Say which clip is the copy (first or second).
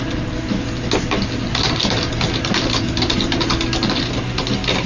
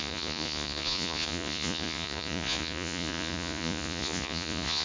second